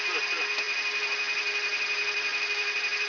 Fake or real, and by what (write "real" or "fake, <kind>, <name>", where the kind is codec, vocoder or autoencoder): real